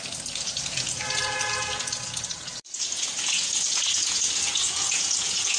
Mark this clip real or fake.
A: fake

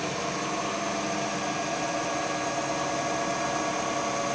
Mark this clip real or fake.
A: real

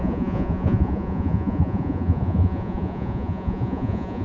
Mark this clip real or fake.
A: fake